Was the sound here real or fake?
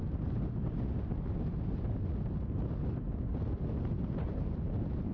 real